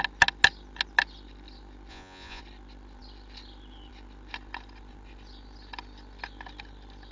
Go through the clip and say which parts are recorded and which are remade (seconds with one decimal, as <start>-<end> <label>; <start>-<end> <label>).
0.0-1.9 recorded; 1.9-2.4 remade; 2.4-7.1 recorded